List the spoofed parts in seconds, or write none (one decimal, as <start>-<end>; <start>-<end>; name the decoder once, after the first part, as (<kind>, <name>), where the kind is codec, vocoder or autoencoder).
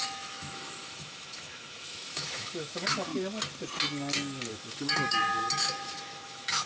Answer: 0.0-3.1 (autoencoder, DAC-VAE); 4.5-6.7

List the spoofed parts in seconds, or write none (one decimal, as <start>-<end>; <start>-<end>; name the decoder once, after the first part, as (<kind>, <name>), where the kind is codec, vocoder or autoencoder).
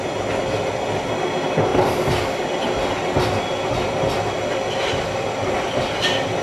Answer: none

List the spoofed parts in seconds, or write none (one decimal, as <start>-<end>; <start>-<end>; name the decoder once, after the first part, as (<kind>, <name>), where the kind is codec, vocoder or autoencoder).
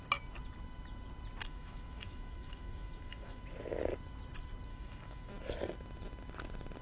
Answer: 1.4-3.4 (autoencoder, DAC-VAE); 4.7-5.3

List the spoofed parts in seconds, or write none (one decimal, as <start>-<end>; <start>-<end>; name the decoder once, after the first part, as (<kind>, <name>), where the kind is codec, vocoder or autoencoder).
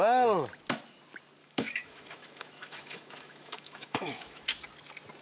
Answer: 1.4-4.5 (autoencoder, DAC-VAE)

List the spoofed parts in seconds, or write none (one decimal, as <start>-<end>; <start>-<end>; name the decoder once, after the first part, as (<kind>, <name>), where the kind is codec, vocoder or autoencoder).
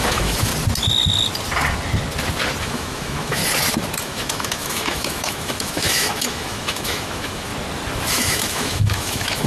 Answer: 0.0-0.5 (autoencoder, DAC-VAE); 2.6-3.4; 4.0-7.5; 8.1-9.5